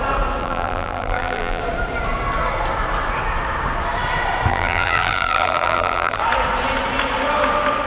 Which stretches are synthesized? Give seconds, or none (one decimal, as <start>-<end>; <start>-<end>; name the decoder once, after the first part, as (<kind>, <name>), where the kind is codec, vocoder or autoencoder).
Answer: 0.4-1.6 (vocoder, BigVGAN v2); 4.5-6.2